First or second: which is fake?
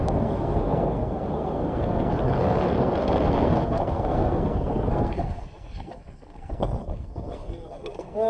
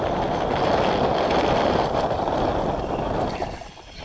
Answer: first